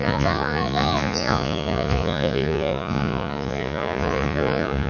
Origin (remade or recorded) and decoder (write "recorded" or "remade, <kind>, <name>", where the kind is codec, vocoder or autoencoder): remade, vocoder, Vocos